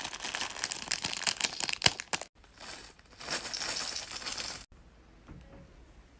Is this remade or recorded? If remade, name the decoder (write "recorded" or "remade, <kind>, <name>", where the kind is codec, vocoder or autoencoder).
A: recorded